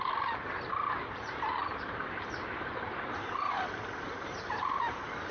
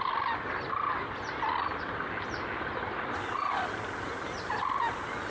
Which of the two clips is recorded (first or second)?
second